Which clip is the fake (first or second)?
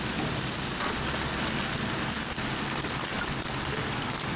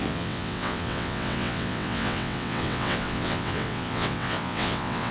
second